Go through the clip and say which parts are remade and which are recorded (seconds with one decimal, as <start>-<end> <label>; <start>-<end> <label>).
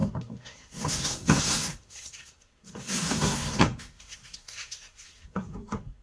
0.0-6.0 remade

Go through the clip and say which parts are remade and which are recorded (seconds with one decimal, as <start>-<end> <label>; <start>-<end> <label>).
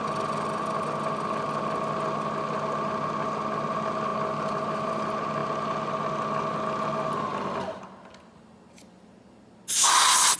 0.0-10.4 recorded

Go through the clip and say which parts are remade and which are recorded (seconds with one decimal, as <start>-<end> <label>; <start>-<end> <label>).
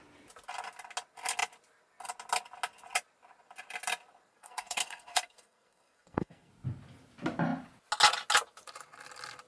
0.0-4.3 recorded; 4.3-6.5 remade; 6.5-9.5 recorded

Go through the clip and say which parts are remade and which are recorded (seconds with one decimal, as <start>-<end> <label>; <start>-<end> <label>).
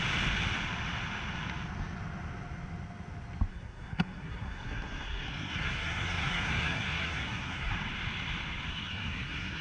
0.0-3.5 recorded; 3.5-7.7 remade; 7.7-8.7 recorded; 8.7-9.6 remade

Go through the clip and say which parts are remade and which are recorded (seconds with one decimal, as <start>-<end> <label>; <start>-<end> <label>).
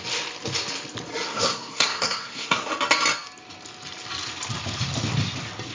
0.0-1.3 recorded; 1.3-2.7 remade; 2.7-5.7 recorded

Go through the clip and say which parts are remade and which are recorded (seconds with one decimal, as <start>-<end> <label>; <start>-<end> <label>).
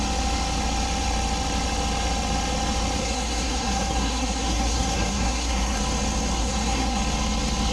0.0-3.0 recorded; 3.0-5.8 remade; 5.8-6.4 recorded; 6.4-7.0 remade; 7.0-7.7 recorded